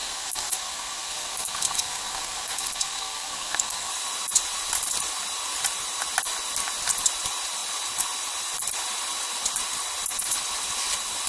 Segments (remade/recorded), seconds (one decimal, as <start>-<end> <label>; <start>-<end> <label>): 0.0-3.9 remade; 3.9-11.3 recorded